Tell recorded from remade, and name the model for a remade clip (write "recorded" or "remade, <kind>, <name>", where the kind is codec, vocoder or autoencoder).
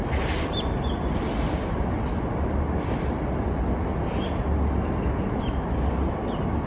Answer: recorded